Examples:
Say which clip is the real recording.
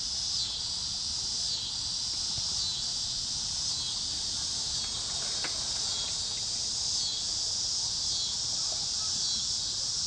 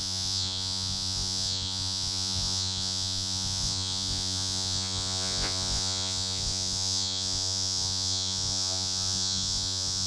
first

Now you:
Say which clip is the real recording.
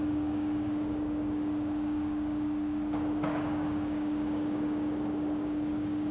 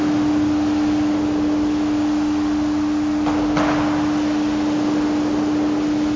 second